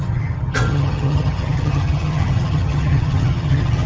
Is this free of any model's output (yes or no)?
no